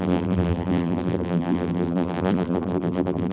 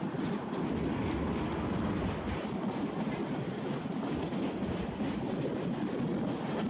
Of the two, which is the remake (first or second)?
first